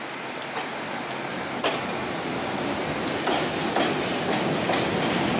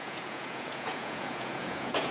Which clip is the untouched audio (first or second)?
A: first